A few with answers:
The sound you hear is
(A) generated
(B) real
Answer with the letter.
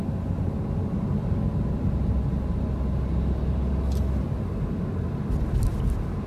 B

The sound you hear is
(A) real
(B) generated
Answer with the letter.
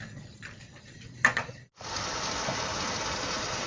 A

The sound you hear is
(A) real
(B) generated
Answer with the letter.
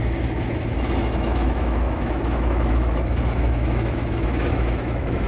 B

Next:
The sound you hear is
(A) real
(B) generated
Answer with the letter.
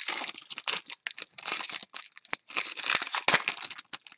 A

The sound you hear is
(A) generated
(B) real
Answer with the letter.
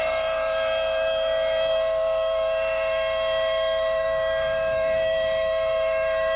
A